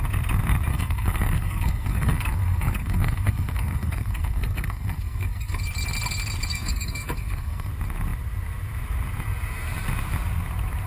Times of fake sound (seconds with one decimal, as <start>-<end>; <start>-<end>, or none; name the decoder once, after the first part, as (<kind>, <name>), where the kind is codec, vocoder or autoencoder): 0.7-5.6 (codec, SNAC); 6.5-7.7